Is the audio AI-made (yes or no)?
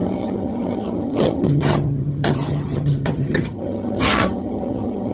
yes